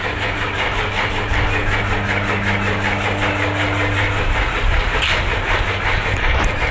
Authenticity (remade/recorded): recorded